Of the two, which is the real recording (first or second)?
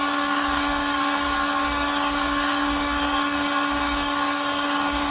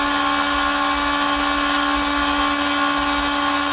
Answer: second